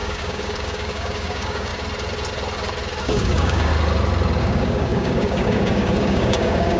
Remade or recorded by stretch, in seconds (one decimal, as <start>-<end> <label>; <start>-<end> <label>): 0.0-1.7 remade; 1.7-3.0 recorded; 3.0-3.7 remade; 3.7-4.4 recorded; 4.4-6.8 remade